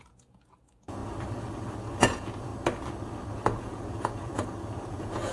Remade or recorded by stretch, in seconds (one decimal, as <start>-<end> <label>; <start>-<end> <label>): 0.0-1.0 remade; 1.0-2.0 recorded; 2.0-2.5 remade; 2.5-3.6 recorded; 3.6-5.3 remade